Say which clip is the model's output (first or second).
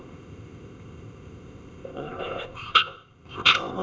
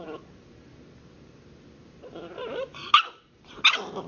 first